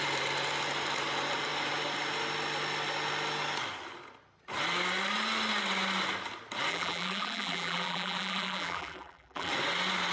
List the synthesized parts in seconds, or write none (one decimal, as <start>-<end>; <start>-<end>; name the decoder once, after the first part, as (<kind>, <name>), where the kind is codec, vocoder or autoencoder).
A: 6.7-9.5 (vocoder, BigVGAN v2)